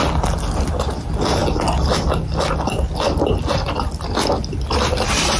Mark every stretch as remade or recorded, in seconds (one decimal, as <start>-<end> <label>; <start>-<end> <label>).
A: 0.0-5.4 recorded